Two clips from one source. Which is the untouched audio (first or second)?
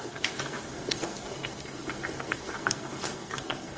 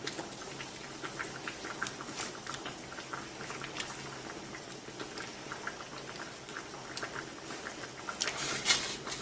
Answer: second